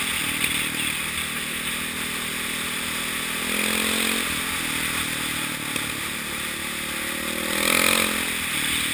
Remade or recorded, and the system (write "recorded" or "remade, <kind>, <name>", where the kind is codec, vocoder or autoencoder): recorded